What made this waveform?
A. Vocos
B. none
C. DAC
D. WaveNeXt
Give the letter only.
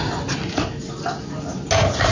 B